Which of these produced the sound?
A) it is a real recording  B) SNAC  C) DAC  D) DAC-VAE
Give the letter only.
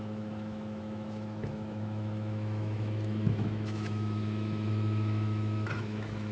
D